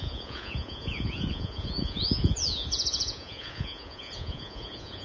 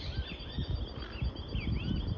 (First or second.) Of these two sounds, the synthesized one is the first